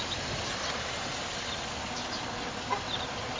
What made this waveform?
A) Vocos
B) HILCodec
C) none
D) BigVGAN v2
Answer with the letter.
C